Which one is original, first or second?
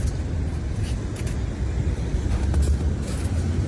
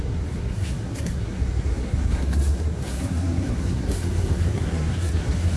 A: first